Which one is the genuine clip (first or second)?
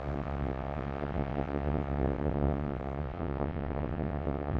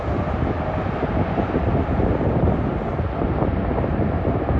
second